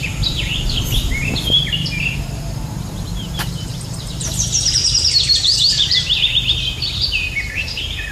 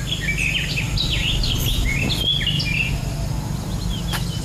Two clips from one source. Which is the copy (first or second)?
first